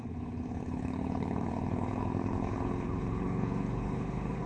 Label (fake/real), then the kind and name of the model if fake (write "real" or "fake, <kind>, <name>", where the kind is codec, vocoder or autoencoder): fake, codec, HILCodec